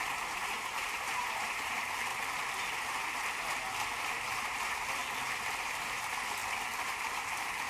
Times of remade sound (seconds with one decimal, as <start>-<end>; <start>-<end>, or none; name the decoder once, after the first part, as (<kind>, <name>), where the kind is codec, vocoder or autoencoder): 0.0-2.1 (vocoder, BigVGAN v2); 4.0-5.0; 5.6-6.4; 7.0-7.7